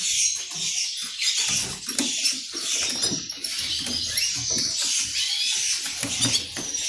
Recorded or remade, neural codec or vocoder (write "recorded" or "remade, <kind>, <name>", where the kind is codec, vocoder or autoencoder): recorded